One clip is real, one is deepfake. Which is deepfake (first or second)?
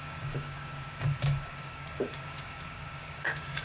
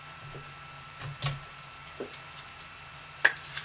first